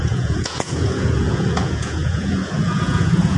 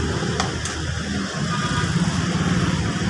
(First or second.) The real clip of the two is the second